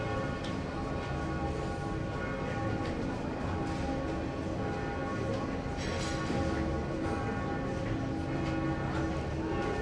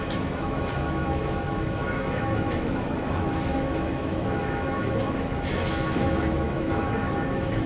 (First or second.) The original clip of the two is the first